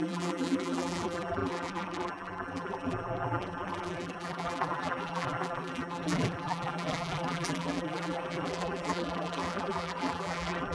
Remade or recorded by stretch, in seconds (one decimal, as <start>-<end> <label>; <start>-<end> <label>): 0.0-10.7 remade